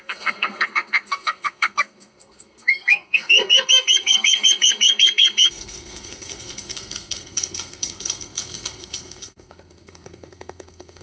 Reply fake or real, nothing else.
fake